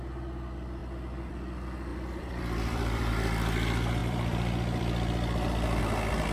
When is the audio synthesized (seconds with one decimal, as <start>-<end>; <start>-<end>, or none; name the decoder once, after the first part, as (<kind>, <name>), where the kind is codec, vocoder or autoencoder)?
1.9-3.1 (vocoder, BigVGAN v2); 4.0-5.8